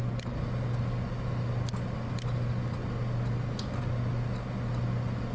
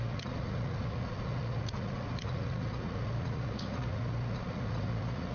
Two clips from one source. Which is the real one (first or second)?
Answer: first